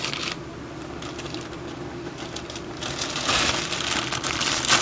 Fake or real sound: real